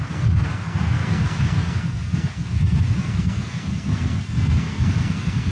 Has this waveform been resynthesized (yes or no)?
yes